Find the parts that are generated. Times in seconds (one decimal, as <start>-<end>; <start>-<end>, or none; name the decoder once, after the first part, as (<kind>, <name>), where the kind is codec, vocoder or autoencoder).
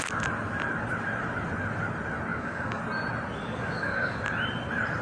2.3-2.8 (codec, DAC); 3.4-4.2